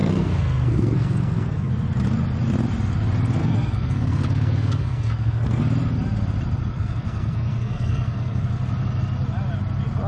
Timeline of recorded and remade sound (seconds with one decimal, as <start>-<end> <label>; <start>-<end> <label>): 0.0-1.7 remade; 1.7-3.4 recorded; 3.4-5.6 remade; 5.6-6.7 recorded; 6.7-8.5 remade; 8.5-10.1 recorded